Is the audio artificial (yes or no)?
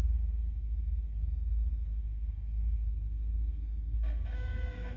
yes